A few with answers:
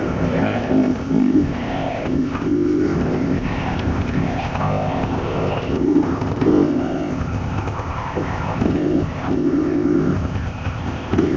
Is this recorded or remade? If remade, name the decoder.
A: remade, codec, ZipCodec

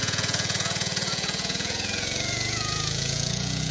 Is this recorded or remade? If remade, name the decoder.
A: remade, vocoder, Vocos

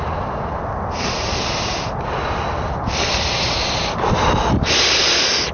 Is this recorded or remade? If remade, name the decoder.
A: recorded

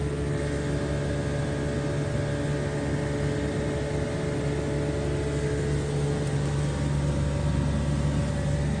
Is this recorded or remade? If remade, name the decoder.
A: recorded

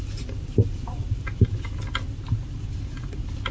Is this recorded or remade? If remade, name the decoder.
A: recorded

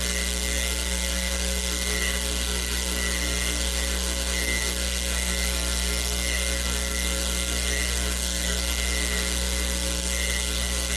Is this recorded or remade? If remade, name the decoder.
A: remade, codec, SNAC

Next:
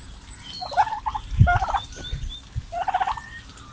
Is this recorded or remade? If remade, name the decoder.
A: recorded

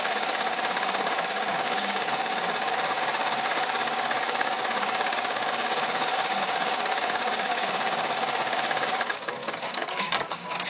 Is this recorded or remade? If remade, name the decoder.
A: remade, codec, DAC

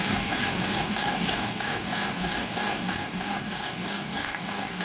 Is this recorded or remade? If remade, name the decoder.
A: remade, codec, DAC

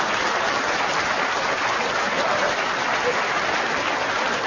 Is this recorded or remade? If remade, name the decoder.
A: recorded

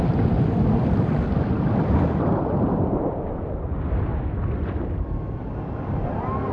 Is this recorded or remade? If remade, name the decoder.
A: recorded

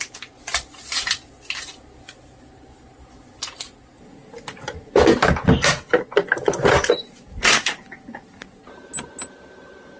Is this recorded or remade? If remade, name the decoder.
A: recorded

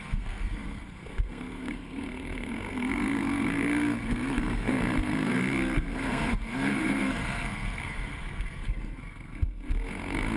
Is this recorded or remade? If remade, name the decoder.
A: remade, codec, SNAC